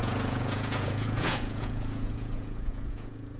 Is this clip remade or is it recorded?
remade